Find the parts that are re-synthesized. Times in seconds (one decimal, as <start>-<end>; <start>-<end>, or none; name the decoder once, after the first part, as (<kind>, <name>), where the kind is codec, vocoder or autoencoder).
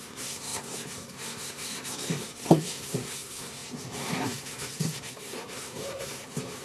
0.0-6.6 (codec, SNAC)